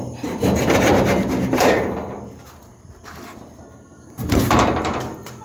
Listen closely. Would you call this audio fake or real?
fake